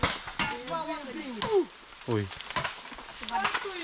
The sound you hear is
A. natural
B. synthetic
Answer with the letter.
A